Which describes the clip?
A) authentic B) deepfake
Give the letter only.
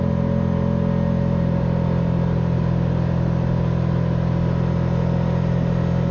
A